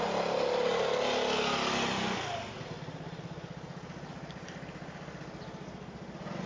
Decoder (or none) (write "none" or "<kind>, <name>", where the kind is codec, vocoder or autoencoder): none